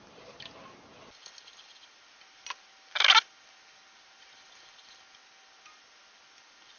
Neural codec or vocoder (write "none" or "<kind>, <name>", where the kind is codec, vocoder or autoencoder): none